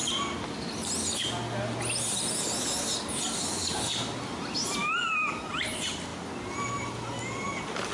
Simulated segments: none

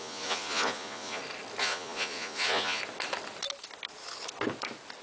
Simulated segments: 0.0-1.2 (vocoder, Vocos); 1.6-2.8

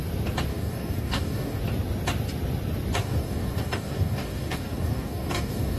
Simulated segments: 0.5-1.6 (codec, DAC); 3.0-5.8

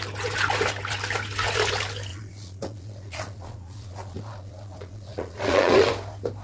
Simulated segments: 2.1-5.9 (vocoder, Vocos)

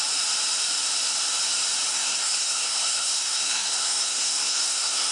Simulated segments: 1.9-5.1 (codec, SNAC)

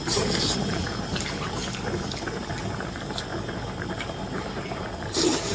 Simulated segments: 0.0-0.8 (vocoder, BigVGAN v2); 2.4-3.3; 3.9-5.5